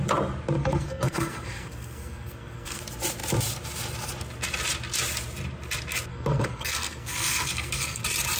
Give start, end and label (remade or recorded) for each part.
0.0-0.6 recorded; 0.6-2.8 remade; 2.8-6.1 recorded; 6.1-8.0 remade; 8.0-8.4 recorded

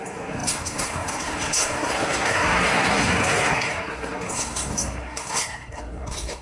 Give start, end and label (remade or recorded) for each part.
0.0-6.4 remade

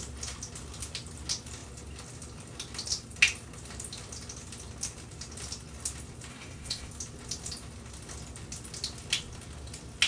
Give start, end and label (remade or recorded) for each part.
0.0-6.3 recorded; 6.3-6.9 remade; 6.9-10.1 recorded

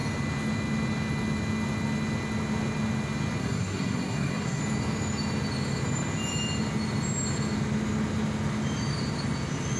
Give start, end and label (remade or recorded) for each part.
0.0-3.4 recorded; 3.4-4.6 remade; 4.6-9.8 recorded

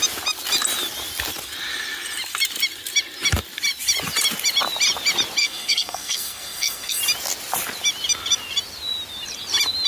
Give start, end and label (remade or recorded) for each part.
0.0-5.4 recorded; 5.4-7.0 remade; 7.0-9.9 recorded